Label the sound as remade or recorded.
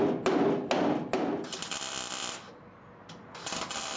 recorded